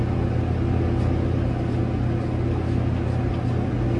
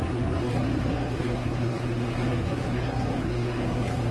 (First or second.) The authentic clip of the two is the first